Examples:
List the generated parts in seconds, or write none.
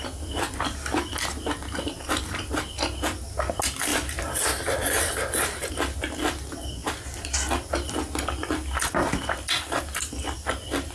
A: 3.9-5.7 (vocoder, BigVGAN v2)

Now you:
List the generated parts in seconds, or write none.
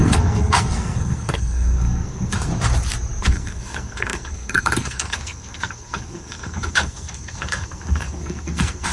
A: 0.0-2.5 (codec, SNAC); 3.2-8.9